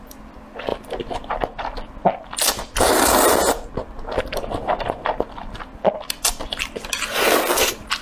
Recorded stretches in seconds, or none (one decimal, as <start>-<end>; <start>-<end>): 0.0-8.0